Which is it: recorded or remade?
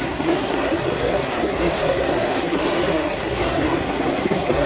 remade